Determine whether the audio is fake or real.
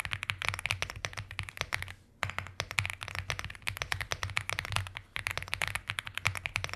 real